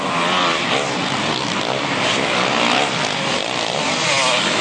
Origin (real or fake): real